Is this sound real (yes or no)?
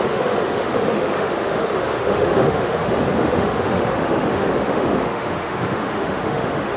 no